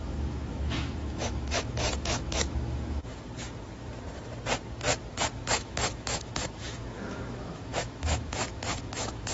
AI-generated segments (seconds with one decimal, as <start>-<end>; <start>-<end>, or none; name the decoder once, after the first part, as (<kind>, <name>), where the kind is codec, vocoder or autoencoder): 0.0-3.1 (autoencoder, DAC-VAE); 5.5-9.3